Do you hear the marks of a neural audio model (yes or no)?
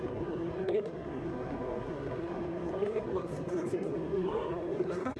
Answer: yes